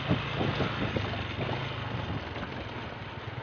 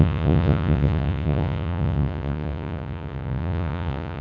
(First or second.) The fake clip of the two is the second